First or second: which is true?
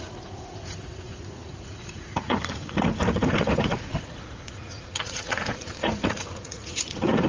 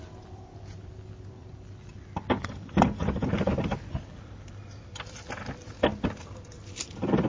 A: second